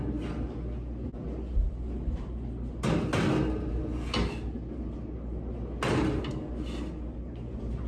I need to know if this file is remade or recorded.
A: recorded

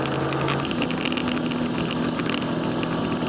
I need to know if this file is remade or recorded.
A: recorded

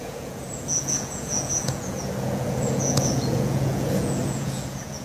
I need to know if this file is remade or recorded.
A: remade